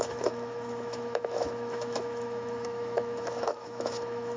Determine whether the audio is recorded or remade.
remade